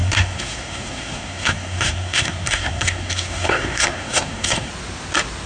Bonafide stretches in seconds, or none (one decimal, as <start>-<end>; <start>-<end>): 4.7-5.5